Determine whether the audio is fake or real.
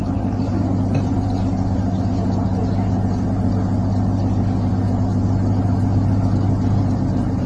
real